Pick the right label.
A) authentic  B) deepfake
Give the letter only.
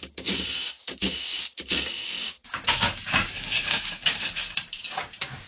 B